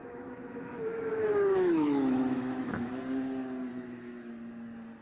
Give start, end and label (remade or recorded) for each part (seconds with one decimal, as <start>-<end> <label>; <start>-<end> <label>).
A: 0.0-2.9 remade; 2.9-3.7 recorded; 3.7-4.3 remade; 4.3-5.0 recorded